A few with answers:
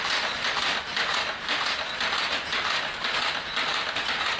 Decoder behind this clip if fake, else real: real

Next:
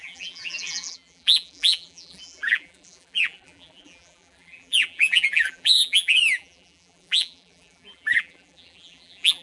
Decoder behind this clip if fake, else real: fake, vocoder, BigVGAN v2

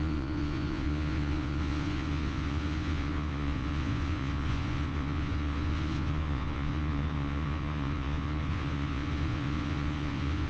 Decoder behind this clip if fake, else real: fake, vocoder, Vocos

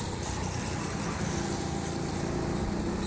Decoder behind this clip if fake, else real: real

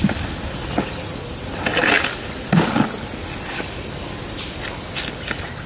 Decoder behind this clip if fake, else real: real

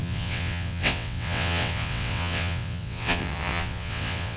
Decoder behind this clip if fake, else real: fake, vocoder, WaveNeXt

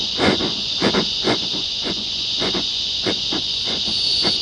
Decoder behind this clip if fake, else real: fake, vocoder, Vocos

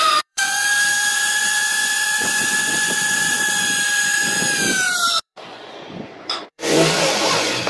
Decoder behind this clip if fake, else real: fake, vocoder, Vocos